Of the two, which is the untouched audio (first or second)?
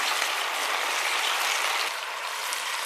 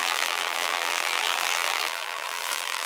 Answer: first